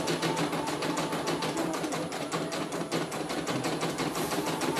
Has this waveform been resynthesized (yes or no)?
no